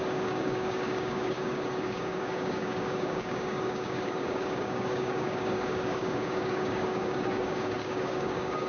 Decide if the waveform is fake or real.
fake